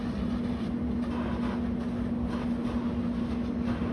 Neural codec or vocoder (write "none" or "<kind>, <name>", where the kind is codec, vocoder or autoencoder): none